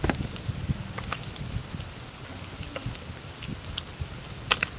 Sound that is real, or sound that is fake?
real